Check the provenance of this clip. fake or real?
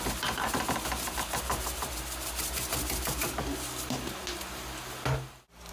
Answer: real